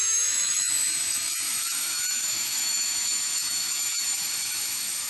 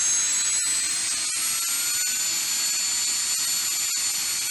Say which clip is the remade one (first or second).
first